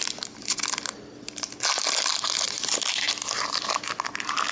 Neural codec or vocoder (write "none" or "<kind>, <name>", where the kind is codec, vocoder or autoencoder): none